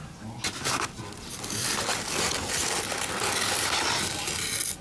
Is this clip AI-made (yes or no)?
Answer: no